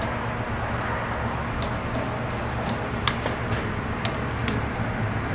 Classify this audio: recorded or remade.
recorded